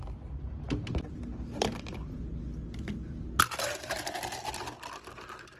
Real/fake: real